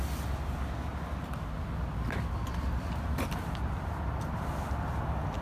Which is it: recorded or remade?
recorded